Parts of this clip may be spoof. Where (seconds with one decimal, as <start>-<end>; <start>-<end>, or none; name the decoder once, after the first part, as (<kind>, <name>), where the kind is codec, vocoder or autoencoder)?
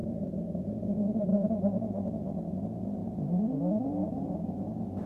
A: 0.0-0.8 (vocoder, BigVGAN v2); 3.0-5.1